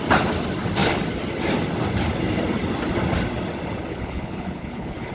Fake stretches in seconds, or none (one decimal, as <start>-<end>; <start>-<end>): 3.9-5.1